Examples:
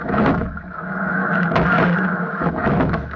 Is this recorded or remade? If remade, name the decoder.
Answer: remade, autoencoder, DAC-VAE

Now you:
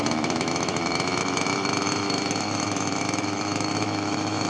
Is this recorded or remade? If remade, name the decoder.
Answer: remade, autoencoder, DAC-VAE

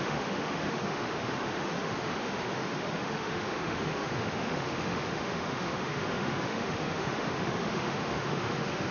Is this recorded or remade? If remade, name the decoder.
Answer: remade, autoencoder, DAC-VAE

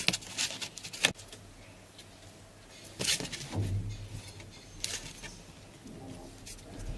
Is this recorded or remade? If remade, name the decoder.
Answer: recorded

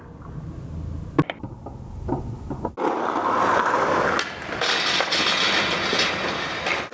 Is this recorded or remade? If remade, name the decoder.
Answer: recorded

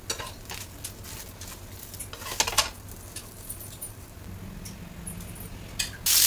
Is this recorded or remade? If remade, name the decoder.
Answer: recorded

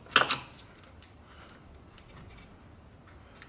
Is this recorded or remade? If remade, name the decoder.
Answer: recorded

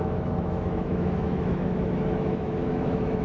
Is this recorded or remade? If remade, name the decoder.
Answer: remade, autoencoder, DAC-VAE